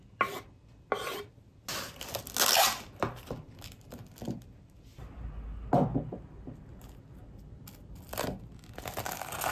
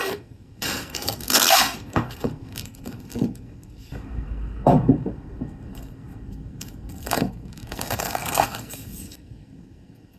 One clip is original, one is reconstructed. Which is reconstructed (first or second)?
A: second